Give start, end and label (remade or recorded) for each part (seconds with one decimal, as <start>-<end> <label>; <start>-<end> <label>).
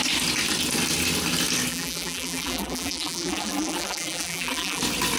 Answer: 0.0-1.7 recorded; 1.7-4.8 remade; 4.8-5.2 recorded